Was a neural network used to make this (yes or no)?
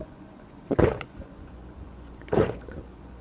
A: yes